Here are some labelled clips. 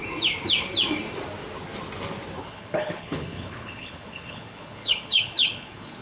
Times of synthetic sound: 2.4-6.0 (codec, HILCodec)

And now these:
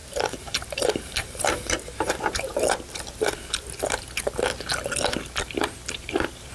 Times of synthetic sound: 0.0-2.5 (vocoder, BigVGAN v2); 6.0-6.5

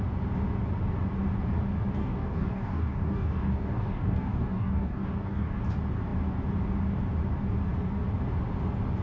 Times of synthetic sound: 2.0-5.6 (codec, DAC)

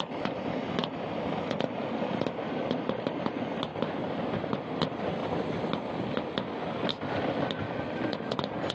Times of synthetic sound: 0.8-2.8 (vocoder, BigVGAN v2); 5.2-6.8